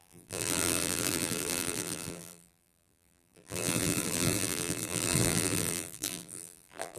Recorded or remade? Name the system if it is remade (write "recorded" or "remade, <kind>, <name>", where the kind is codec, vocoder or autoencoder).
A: remade, vocoder, BigVGAN v2